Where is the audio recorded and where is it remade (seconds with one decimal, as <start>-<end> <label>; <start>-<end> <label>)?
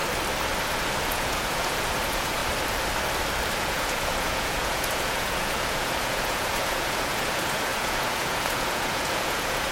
0.0-1.0 recorded; 1.0-2.4 remade; 2.4-3.6 recorded; 3.6-9.7 remade